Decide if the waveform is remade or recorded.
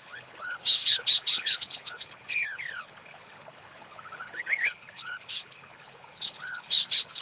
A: remade